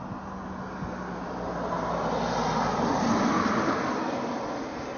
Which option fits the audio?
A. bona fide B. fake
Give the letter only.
A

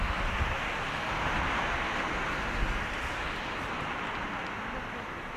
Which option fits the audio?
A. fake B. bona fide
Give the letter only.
B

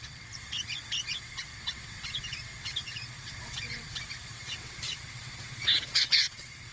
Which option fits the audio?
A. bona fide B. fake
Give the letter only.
B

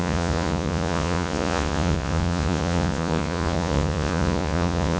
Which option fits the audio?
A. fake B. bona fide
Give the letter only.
A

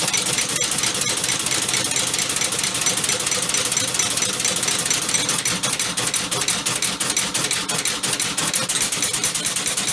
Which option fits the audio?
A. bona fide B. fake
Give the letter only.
A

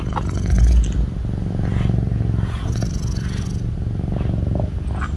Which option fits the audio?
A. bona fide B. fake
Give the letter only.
A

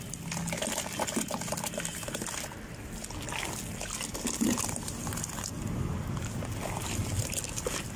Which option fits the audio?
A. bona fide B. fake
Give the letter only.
A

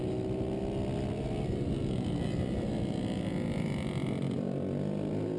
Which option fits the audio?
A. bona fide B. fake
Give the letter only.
A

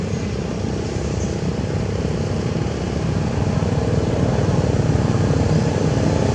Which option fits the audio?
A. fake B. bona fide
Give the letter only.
B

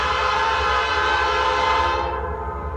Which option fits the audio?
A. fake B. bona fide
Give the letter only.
B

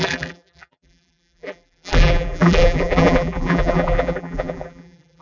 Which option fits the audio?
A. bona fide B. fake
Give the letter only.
B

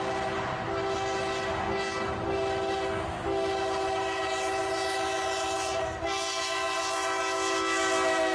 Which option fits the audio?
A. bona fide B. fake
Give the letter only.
A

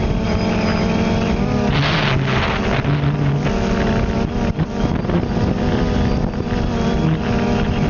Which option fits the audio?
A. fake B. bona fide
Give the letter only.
B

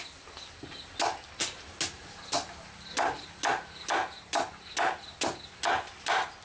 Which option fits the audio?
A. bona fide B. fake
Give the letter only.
A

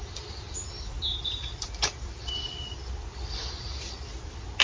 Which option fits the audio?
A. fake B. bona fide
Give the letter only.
B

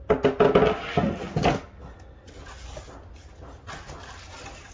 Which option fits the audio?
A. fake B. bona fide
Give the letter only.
B